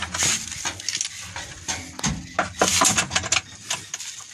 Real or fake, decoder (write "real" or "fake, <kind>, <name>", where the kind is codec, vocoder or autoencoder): real